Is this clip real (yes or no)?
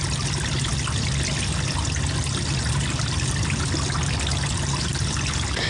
yes